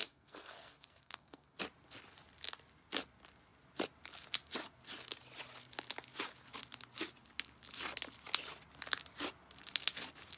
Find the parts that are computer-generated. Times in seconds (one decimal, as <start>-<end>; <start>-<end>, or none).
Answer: 0.0-1.6